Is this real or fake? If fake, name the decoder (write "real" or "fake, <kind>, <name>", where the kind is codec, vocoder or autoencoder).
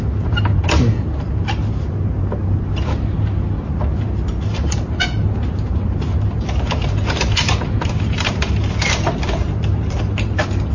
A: fake, vocoder, BigVGAN v2